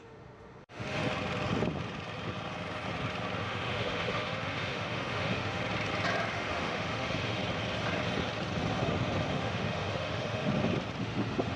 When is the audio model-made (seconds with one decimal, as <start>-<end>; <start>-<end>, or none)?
0.0-1.0; 3.4-5.6; 6.3-7.4; 9.3-10.5; 11.0-11.6